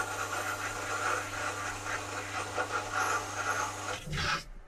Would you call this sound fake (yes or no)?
no